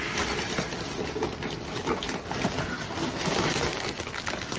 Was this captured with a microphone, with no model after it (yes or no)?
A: yes